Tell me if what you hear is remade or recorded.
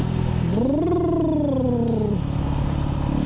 recorded